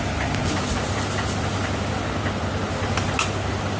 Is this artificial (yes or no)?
no